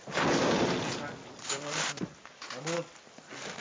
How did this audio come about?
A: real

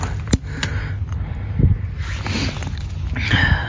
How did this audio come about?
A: real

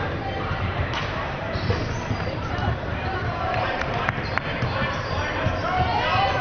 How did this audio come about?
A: fake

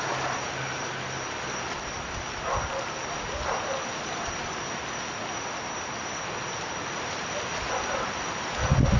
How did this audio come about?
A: real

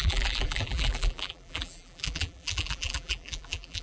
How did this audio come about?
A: fake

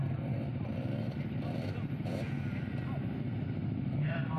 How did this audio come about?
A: fake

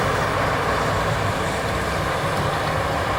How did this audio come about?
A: real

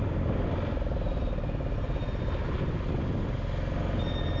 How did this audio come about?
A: real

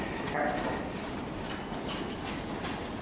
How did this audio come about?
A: real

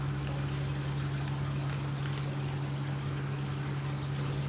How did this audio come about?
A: real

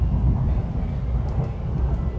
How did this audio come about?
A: real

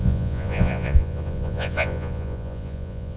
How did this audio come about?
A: fake